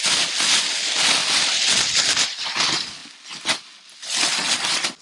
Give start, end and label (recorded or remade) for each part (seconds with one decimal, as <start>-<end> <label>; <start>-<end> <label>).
0.0-5.0 recorded